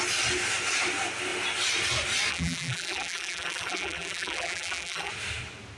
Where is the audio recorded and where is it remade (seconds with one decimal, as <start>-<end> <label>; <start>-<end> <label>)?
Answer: 0.0-2.3 recorded; 2.3-5.1 remade; 5.1-5.8 recorded